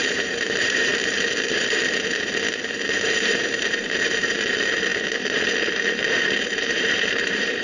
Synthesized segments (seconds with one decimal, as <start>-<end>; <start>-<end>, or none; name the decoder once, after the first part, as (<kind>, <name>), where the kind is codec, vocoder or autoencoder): 0.0-0.9 (vocoder, BigVGAN v2); 2.8-4.9; 5.7-7.6